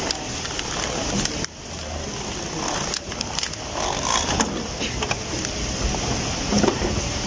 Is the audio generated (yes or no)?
no